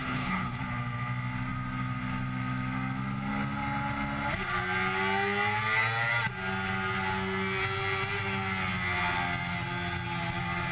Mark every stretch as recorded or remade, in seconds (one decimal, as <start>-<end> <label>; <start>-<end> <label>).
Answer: 0.0-0.6 remade; 0.6-10.7 recorded